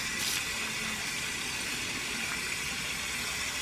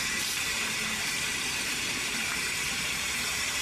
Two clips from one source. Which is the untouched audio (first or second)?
first